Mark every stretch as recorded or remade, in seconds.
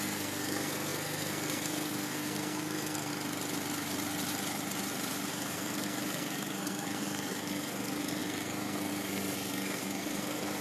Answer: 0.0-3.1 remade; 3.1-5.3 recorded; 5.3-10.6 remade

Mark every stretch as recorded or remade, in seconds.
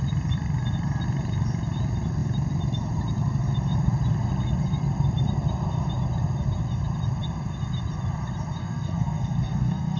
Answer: 0.0-8.6 recorded; 8.6-10.0 remade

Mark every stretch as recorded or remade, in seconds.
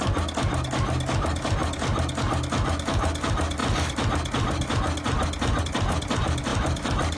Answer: 0.0-7.2 recorded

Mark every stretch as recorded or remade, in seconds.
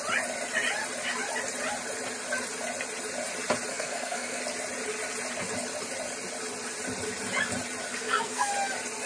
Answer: 0.0-3.7 recorded; 3.7-4.4 remade; 4.4-7.9 recorded; 7.9-8.5 remade; 8.5-9.1 recorded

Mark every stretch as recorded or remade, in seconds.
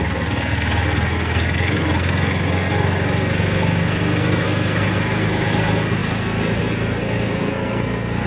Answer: 0.0-8.3 remade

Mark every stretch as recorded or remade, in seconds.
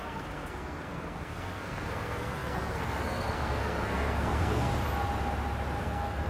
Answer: 0.0-4.7 remade; 4.7-5.8 recorded; 5.8-6.3 remade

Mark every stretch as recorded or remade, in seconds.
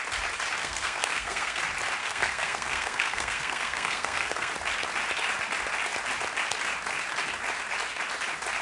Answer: 0.0-0.6 recorded; 0.6-1.6 remade; 1.6-2.0 recorded; 2.0-4.5 remade; 4.5-8.6 recorded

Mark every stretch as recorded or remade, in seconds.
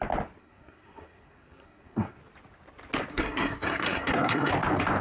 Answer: 0.0-0.4 recorded; 0.4-2.2 remade; 2.2-3.1 recorded; 3.1-4.5 remade; 4.5-5.0 recorded